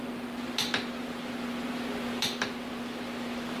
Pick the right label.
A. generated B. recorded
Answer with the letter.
B